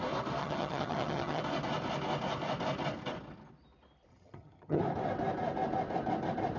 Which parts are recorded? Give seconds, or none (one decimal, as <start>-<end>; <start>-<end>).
0.0-0.4; 1.4-4.1; 4.8-6.6